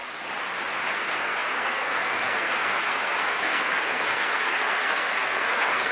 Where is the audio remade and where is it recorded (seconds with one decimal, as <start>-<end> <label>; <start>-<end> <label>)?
0.0-0.9 recorded; 0.9-5.9 remade